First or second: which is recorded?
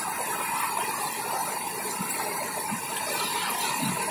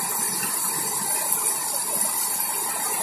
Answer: second